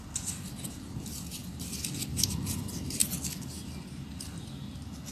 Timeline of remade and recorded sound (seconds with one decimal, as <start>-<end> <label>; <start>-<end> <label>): 0.0-5.1 recorded